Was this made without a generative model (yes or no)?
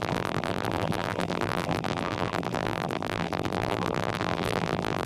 no